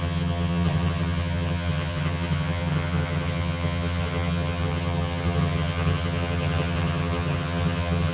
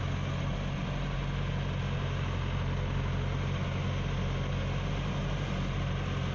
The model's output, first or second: first